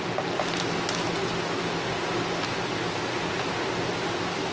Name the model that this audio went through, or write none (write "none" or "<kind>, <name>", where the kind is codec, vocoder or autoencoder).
none